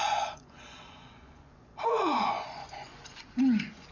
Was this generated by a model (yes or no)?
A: yes